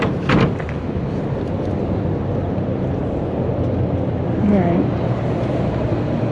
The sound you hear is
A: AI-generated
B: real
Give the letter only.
B